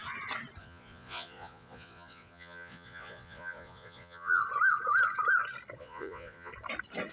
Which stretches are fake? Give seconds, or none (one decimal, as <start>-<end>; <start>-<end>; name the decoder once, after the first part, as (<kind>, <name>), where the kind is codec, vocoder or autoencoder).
0.6-4.4 (vocoder, Vocos); 5.8-6.5